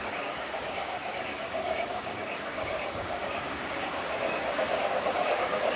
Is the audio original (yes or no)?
no